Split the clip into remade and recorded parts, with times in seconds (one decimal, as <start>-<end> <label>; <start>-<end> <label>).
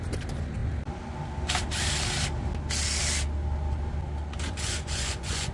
0.0-4.2 recorded; 4.2-5.5 remade